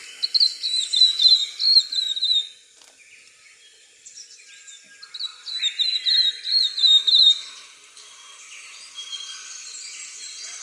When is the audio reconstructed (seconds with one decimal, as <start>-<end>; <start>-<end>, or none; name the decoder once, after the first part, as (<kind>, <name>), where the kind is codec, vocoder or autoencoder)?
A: none